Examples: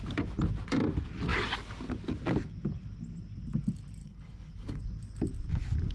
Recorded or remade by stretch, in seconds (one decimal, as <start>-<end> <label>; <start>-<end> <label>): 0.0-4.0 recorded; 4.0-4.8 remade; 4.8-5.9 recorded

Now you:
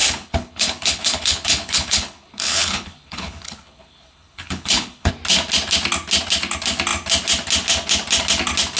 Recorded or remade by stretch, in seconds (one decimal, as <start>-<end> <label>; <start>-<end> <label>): 0.0-5.1 remade; 5.1-8.8 recorded

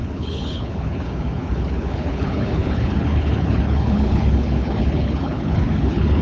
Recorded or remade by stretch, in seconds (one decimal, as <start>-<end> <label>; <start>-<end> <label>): 0.0-6.2 remade

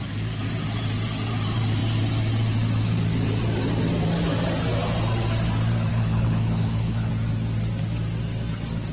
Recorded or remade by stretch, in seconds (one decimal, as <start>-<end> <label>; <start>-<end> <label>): 0.0-5.9 recorded; 5.9-7.1 remade; 7.1-8.9 recorded